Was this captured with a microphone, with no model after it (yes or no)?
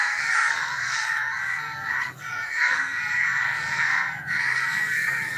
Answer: no